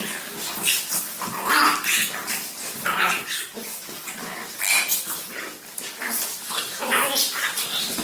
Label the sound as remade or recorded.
recorded